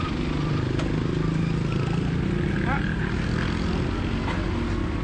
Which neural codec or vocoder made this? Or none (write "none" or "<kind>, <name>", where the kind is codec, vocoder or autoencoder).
none